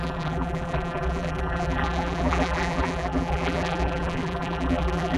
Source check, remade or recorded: remade